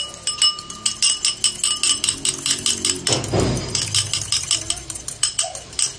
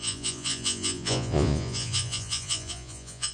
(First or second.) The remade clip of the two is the second